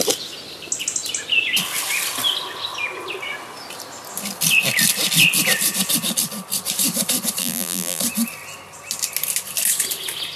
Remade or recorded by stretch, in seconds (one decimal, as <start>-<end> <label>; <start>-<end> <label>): 0.0-7.4 recorded; 7.4-8.0 remade; 8.0-10.4 recorded